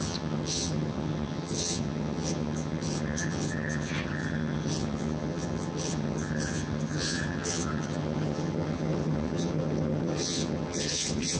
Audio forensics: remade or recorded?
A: remade